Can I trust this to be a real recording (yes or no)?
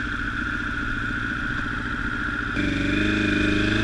yes